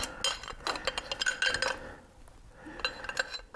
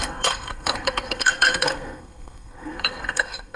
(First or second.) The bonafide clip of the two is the first